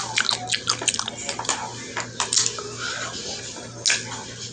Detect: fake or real real